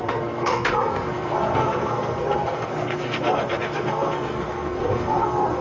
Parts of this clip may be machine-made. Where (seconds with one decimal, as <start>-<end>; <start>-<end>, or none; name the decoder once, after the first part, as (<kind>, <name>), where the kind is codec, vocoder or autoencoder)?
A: 0.0-5.6 (codec, SNAC)